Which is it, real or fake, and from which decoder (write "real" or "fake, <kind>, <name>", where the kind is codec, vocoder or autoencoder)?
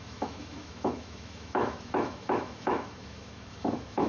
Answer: fake, autoencoder, DAC-VAE